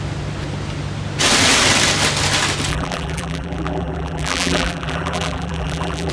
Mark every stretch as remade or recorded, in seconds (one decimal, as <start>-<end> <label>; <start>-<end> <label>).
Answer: 0.0-2.7 recorded; 2.7-6.1 remade